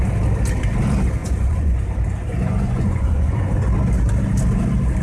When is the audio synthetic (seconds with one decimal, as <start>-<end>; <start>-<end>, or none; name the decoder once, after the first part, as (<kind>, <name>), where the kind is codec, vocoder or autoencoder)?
1.2-1.8 (vocoder, Vocos); 2.3-3.6